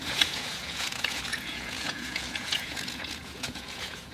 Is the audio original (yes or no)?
no